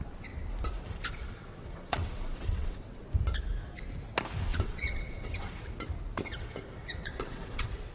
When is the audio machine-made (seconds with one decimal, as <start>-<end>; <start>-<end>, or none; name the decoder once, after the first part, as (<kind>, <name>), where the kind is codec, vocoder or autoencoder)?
1.2-3.0 (vocoder, WaveNeXt); 4.5-5.7; 6.8-7.9